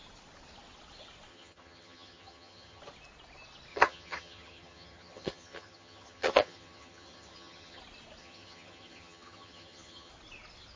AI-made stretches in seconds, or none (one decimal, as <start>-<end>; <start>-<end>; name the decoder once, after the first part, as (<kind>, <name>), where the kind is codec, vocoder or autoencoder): 1.3-2.8 (vocoder, HiFi-GAN); 3.7-7.8; 8.2-10.1